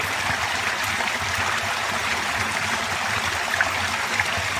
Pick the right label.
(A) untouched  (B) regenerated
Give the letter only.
A